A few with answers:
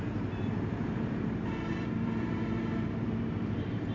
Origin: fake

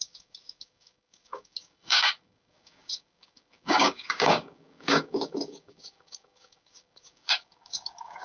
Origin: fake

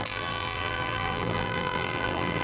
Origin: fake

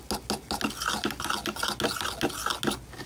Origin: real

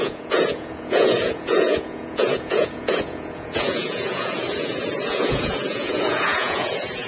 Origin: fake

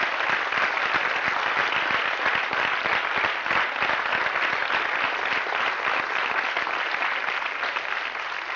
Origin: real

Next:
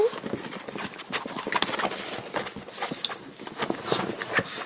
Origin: real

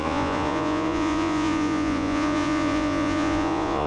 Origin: fake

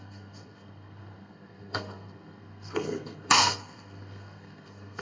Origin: fake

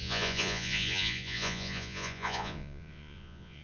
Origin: fake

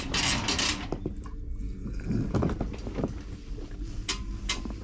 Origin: real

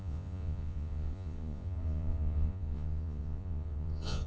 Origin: fake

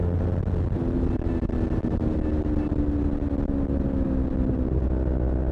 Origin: real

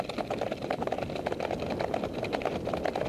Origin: real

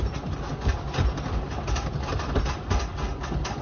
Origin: real